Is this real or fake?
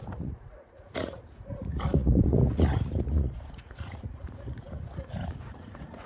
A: fake